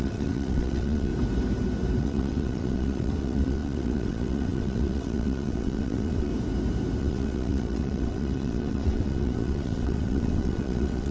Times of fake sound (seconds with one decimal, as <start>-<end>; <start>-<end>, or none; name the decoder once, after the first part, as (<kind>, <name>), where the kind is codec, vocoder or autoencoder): 0.0-1.1 (vocoder, WaveNeXt); 2.0-6.3; 7.0-11.1